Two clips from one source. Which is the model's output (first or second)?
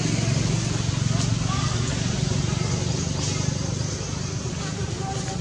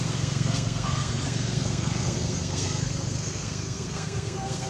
second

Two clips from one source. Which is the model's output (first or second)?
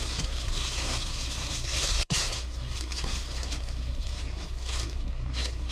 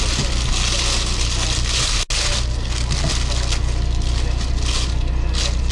first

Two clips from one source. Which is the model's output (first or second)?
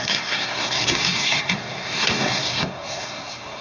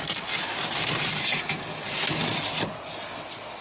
first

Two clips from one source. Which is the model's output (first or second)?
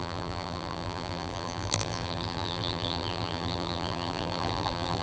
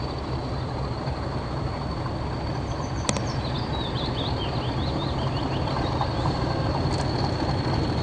first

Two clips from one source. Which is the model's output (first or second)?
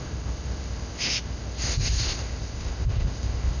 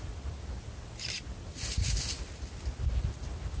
first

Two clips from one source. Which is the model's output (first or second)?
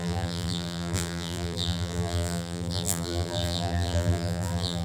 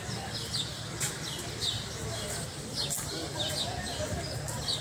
first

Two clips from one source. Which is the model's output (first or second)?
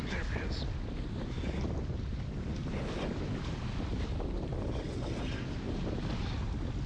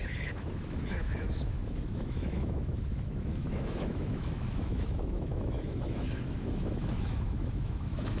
second